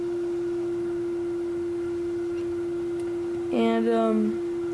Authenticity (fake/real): real